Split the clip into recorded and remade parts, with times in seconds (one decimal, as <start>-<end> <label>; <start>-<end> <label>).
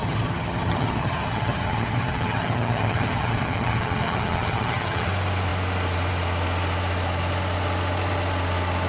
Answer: 0.0-5.1 remade; 5.1-8.9 recorded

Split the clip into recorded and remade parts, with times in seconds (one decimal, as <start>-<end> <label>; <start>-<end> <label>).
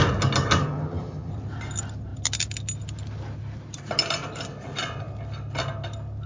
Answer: 0.0-0.6 recorded; 0.6-1.3 remade; 1.3-6.3 recorded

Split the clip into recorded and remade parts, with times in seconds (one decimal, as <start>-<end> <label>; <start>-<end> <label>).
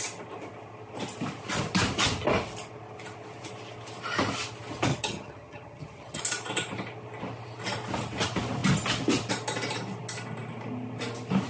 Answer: 0.0-4.9 recorded; 4.9-6.2 remade; 6.2-11.5 recorded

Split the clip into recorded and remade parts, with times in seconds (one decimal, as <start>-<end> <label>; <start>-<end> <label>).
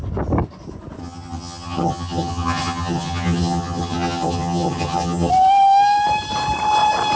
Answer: 0.0-1.0 recorded; 1.0-5.3 remade; 5.3-7.2 recorded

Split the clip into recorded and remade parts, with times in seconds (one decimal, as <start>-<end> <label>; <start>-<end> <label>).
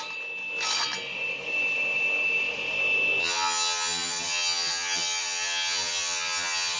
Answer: 0.0-3.2 recorded; 3.2-6.8 remade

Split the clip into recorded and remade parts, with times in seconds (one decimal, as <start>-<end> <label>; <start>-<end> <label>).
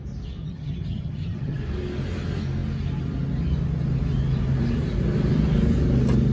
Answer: 0.0-0.4 recorded; 0.4-1.6 remade; 1.6-6.3 recorded